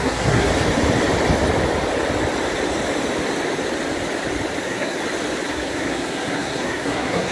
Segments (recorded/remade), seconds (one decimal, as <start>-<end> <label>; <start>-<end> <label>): 0.0-0.5 remade; 0.5-4.6 recorded; 4.6-5.0 remade; 5.0-5.5 recorded; 5.5-7.3 remade